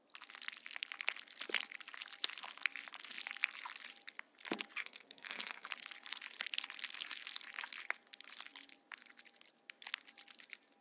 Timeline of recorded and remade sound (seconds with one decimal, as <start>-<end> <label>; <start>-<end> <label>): 0.0-4.8 recorded; 4.8-5.7 remade; 5.7-10.8 recorded